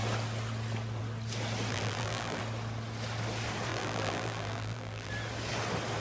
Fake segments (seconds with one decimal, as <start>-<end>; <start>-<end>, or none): 1.7-2.4; 3.7-5.1